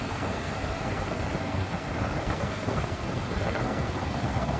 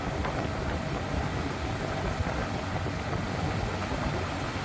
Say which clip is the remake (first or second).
first